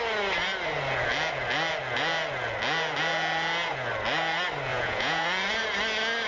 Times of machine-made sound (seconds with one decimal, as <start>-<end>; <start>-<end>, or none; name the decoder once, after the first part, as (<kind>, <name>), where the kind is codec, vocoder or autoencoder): 4.7-5.6 (vocoder, Vocos)